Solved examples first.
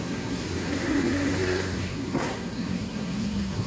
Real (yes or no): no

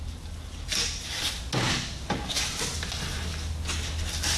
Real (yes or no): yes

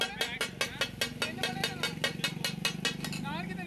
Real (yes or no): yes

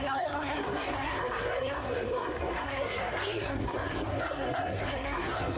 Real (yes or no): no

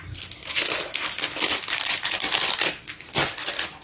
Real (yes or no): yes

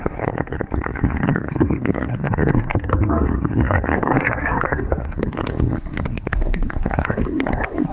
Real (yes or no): no